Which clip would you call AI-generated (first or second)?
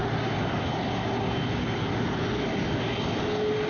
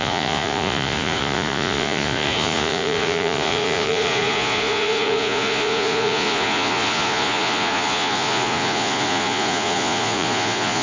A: second